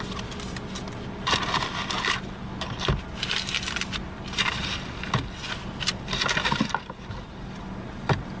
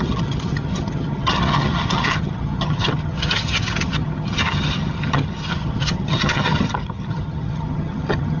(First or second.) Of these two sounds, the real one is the first